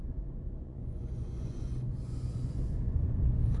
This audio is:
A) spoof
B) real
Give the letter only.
A